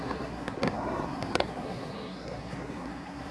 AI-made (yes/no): yes